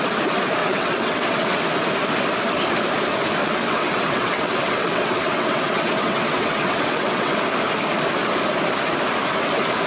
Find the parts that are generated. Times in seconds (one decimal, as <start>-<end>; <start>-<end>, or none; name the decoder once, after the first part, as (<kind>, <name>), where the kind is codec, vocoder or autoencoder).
0.6-1.6 (vocoder, WaveNeXt); 3.4-7.4